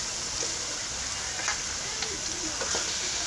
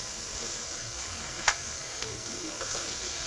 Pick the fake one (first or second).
second